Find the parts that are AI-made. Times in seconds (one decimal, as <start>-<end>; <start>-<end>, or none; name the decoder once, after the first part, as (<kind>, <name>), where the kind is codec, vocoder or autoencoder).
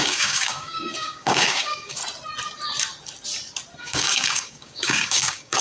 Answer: 0.0-2.0 (codec, DAC); 3.8-5.6